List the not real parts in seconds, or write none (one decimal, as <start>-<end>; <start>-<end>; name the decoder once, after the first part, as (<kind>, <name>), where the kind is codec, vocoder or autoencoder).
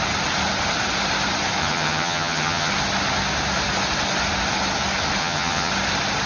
1.6-2.7 (vocoder, HiFi-GAN); 5.2-5.7